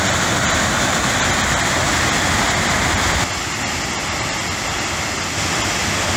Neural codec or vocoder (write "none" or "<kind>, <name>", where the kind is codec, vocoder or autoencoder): none